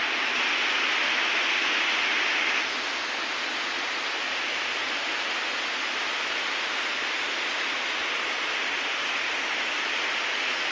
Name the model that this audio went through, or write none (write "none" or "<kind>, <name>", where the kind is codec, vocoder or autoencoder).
none